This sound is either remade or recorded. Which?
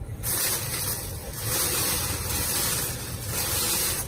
recorded